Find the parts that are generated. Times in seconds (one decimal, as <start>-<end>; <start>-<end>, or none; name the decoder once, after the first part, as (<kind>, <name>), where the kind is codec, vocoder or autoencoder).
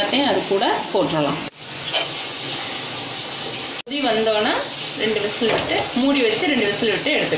0.9-2.7 (vocoder, Vocos)